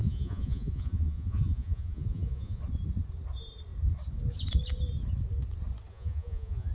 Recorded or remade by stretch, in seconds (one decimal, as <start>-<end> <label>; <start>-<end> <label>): 0.0-2.6 remade; 2.6-5.9 recorded; 5.9-6.7 remade